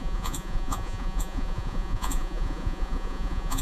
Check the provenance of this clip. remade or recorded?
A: remade